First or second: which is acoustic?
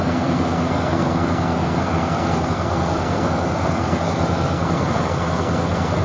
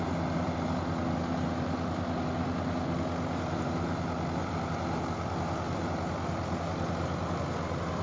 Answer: second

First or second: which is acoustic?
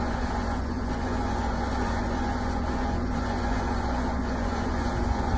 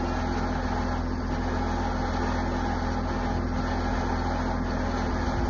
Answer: second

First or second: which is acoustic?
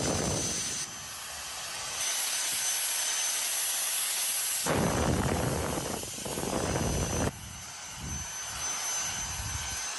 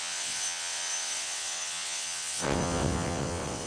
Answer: first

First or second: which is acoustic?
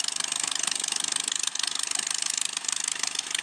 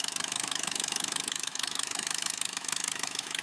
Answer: first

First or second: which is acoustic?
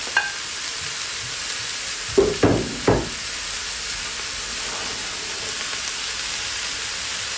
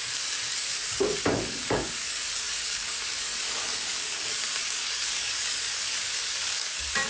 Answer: first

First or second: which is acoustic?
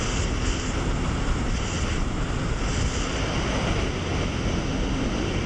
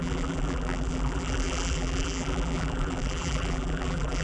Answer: first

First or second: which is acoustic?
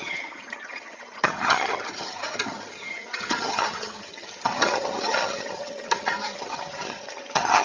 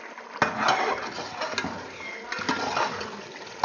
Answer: second